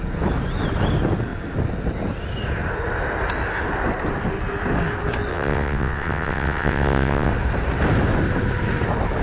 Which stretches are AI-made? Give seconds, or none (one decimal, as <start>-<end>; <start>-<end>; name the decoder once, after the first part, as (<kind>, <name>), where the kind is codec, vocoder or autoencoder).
5.3-7.3 (vocoder, WaveNeXt)